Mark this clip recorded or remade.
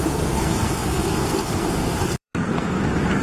remade